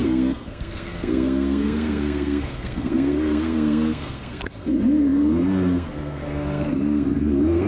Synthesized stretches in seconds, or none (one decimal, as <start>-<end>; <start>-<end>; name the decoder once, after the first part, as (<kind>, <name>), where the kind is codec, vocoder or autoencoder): 0.0-7.7 (codec, SNAC)